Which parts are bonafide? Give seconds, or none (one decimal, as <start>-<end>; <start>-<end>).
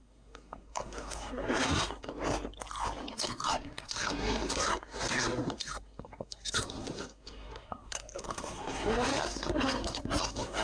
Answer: 2.1-3.1